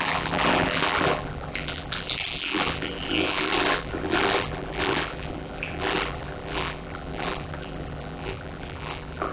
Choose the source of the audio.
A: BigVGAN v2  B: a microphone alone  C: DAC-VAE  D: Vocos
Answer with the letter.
A